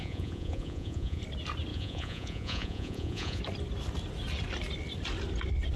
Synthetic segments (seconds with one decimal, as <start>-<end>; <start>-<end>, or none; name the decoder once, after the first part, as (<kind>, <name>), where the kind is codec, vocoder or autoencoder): 0.0-1.2 (vocoder, Vocos); 1.7-3.4